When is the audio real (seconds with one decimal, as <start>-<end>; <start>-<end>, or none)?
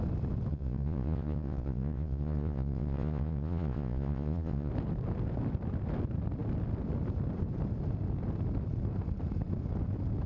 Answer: 0.0-0.5; 4.7-10.3